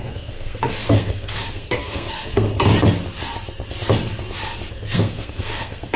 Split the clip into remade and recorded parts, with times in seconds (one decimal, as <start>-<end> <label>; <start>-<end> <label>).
0.0-2.7 remade; 2.7-4.7 recorded; 4.7-6.0 remade